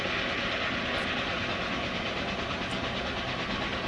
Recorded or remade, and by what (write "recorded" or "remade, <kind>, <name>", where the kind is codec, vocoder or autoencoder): recorded